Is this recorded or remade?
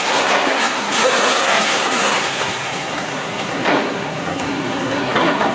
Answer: remade